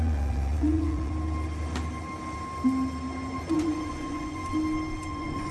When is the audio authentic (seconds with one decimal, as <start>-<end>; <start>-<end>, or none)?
1.1-3.4; 4.4-5.1